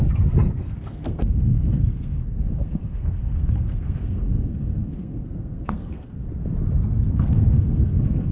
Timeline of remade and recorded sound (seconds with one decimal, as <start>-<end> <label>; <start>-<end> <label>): 0.0-6.2 remade; 6.2-7.1 recorded; 7.1-8.3 remade